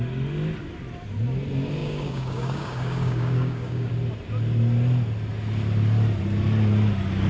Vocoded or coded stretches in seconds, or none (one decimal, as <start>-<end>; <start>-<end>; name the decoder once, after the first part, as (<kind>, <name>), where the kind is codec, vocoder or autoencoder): 1.8-3.9 (codec, DAC)